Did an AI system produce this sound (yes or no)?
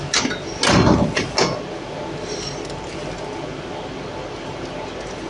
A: no